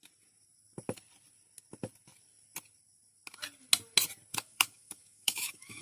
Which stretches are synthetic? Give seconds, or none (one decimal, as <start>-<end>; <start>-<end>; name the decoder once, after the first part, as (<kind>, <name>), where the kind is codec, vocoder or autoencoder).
4.3-5.8 (autoencoder, DAC-VAE)